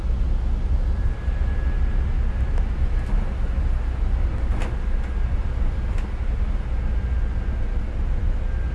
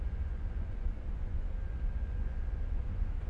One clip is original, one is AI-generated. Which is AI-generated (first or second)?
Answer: second